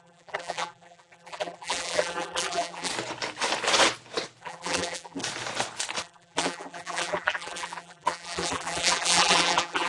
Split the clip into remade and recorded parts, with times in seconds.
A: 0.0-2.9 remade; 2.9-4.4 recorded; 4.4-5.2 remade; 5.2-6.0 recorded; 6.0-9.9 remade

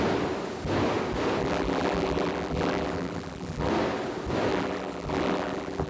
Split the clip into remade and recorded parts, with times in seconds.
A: 0.0-1.4 recorded; 1.4-3.7 remade; 3.7-4.5 recorded; 4.5-5.9 remade

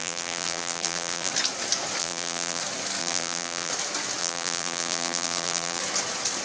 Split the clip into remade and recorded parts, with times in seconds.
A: 0.0-1.3 remade; 1.3-2.0 recorded; 2.0-2.6 remade; 2.6-3.0 recorded; 3.0-3.7 remade; 3.7-4.2 recorded; 4.2-5.8 remade; 5.8-6.4 recorded